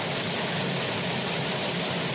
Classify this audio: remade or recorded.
recorded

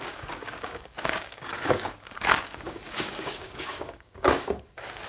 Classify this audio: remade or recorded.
remade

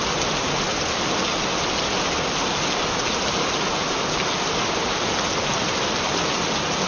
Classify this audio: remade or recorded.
recorded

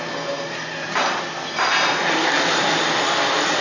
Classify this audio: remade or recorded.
recorded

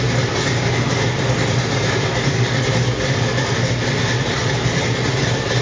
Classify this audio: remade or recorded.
recorded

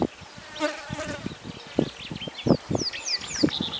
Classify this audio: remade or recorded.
recorded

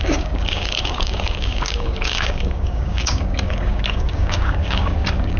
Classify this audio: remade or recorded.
remade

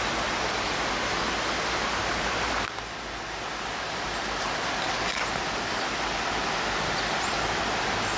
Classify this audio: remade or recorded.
recorded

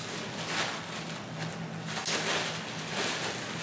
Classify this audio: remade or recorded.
recorded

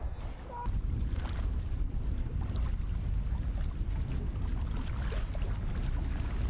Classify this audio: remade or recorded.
recorded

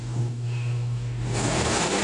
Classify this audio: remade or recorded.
remade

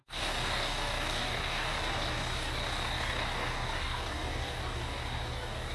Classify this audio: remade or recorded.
remade